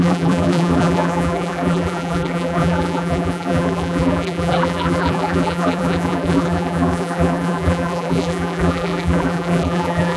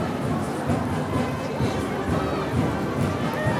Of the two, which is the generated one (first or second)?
first